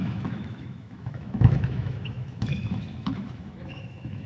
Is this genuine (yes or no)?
no